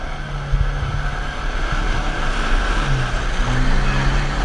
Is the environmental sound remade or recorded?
recorded